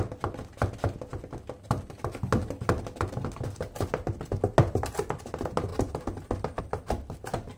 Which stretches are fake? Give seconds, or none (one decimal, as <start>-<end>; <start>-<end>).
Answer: none